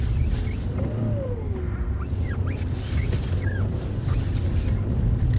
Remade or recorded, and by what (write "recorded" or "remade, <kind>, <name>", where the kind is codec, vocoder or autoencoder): recorded